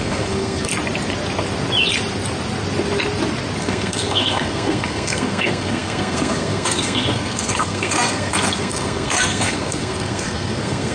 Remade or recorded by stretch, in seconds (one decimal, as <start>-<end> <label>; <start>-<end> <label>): 0.0-0.7 remade; 0.7-3.6 recorded; 3.6-10.9 remade